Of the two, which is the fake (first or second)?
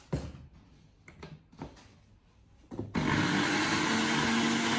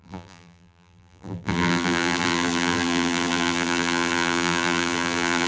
second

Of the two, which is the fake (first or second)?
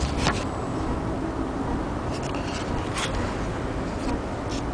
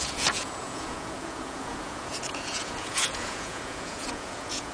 second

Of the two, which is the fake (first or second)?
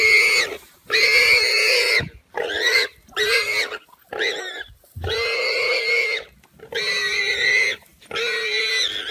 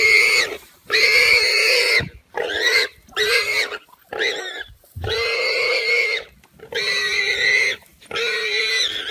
second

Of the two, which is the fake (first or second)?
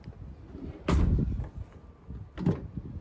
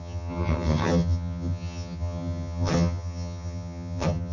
second